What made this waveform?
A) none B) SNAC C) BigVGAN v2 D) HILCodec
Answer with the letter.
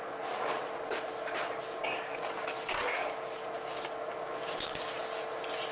A